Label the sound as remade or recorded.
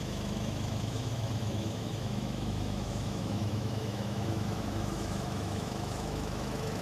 remade